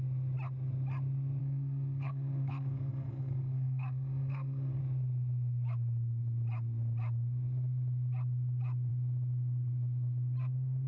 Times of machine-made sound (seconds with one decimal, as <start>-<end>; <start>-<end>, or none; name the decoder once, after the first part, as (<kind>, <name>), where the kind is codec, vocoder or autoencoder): 1.4-4.8 (codec, SNAC)